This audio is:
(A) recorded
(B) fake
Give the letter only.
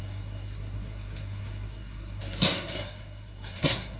B